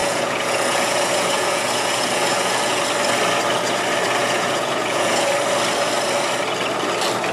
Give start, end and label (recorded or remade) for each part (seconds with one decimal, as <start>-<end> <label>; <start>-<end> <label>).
0.0-2.8 remade; 2.8-4.2 recorded; 4.2-5.3 remade; 5.3-7.3 recorded